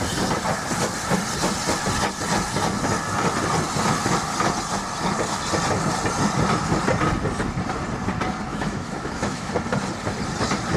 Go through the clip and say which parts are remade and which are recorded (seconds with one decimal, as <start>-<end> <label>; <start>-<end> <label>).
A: 0.0-8.5 recorded; 8.5-9.5 remade; 9.5-10.8 recorded